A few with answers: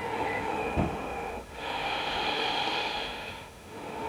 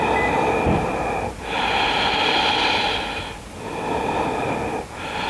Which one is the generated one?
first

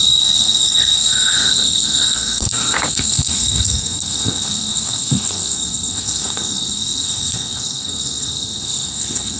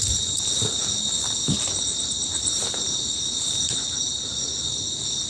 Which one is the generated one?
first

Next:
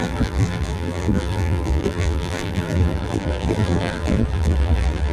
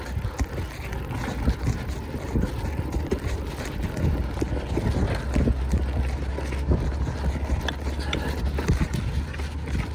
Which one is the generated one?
first